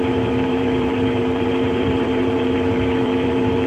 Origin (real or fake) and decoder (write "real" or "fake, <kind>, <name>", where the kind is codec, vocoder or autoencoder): fake, vocoder, BigVGAN v2